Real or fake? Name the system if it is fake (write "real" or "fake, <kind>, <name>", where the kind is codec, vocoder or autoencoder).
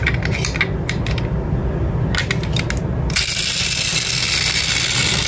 real